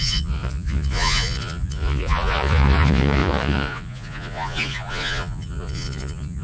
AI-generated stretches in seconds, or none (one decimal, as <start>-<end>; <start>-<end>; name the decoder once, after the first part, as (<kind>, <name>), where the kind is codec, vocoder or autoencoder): 0.0-6.4 (vocoder, Vocos)